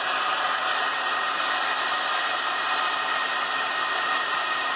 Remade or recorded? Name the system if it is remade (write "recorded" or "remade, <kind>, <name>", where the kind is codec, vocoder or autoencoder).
recorded